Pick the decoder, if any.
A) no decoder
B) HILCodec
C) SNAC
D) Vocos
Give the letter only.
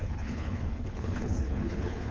B